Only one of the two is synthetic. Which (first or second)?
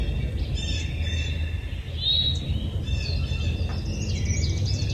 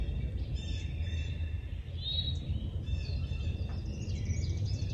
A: second